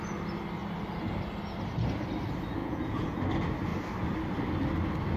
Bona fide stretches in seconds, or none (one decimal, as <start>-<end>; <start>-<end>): 0.0-2.6; 3.2-5.2